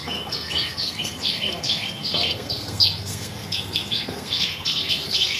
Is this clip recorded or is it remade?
remade